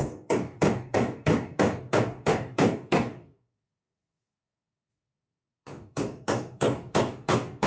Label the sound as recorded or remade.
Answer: remade